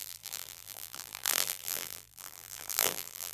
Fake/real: fake